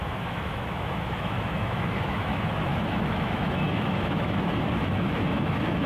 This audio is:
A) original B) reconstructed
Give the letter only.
B